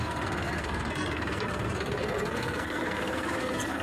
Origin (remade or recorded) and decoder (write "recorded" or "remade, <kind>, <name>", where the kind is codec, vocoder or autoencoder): remade, codec, SNAC